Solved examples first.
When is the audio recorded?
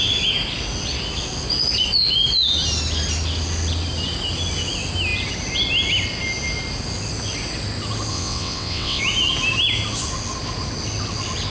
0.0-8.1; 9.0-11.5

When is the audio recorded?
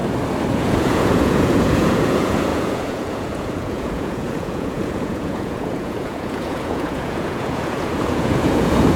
0.0-0.5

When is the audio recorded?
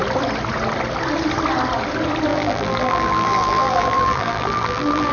0.0-2.3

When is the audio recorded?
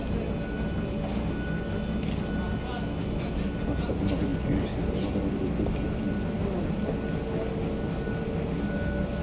0.0-9.2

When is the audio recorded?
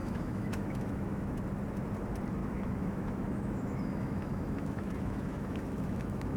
1.4-2.4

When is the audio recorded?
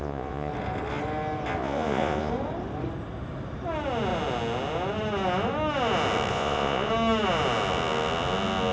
0.5-1.6; 2.3-6.3; 6.9-8.7